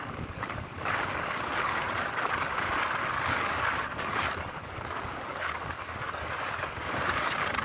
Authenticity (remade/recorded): remade